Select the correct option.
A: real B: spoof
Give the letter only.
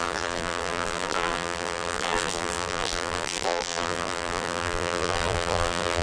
B